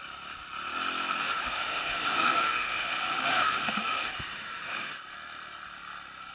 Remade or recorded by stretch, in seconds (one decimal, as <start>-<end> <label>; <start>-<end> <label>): 0.0-1.2 recorded; 1.2-5.0 remade; 5.0-6.3 recorded